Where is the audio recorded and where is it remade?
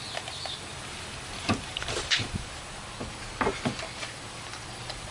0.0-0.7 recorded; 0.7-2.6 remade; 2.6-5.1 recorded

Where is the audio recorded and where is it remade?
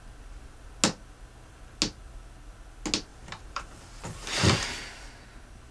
0.0-3.1 recorded; 3.1-3.8 remade; 3.8-5.7 recorded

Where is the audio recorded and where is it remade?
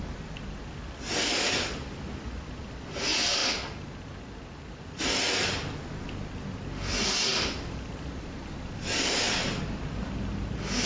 0.0-7.3 recorded; 7.3-9.1 remade; 9.1-10.8 recorded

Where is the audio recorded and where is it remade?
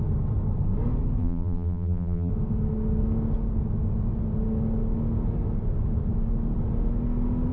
0.0-1.2 recorded; 1.2-2.3 remade; 2.3-7.5 recorded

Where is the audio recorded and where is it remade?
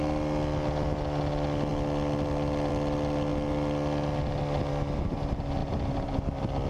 0.0-5.6 recorded; 5.6-6.3 remade; 6.3-6.7 recorded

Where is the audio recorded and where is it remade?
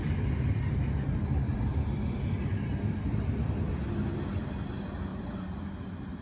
0.0-3.7 remade; 3.7-5.1 recorded; 5.1-5.6 remade; 5.6-6.2 recorded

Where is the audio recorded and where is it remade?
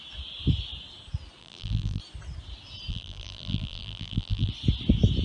0.0-1.4 recorded; 1.4-2.0 remade; 2.0-2.9 recorded; 2.9-4.5 remade; 4.5-5.2 recorded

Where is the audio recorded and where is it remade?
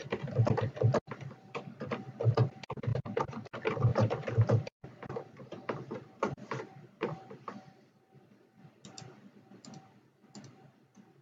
0.0-2.9 recorded; 2.9-3.5 remade; 3.5-3.9 recorded; 3.9-7.9 remade; 7.9-11.2 recorded